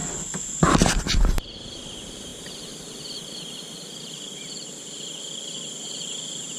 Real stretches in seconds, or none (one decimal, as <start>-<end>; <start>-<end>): 0.0-0.9